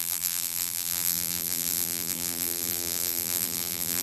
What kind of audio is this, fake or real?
fake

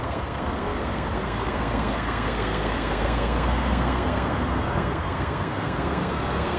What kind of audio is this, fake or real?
fake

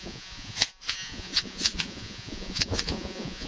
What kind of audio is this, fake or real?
fake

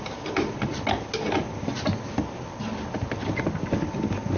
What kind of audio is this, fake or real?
real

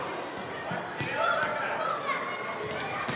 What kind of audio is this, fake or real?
real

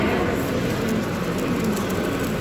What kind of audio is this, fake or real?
real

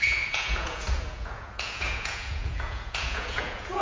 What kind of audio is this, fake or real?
fake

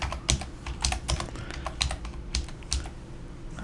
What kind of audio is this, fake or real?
real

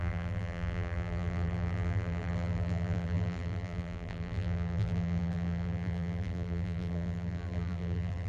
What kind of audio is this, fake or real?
fake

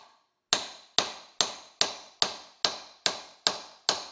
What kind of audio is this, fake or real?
real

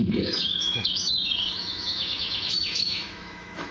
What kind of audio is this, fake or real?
fake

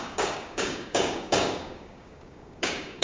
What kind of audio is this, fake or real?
fake